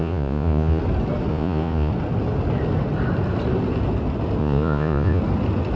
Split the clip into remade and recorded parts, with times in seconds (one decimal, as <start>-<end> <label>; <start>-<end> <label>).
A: 0.0-0.8 remade; 0.8-1.3 recorded; 1.3-1.9 remade; 1.9-4.4 recorded; 4.4-5.2 remade; 5.2-5.8 recorded